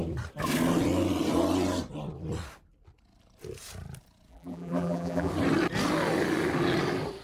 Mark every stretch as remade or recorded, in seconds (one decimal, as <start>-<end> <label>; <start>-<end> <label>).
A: 0.0-4.3 recorded; 4.3-5.3 remade; 5.3-7.2 recorded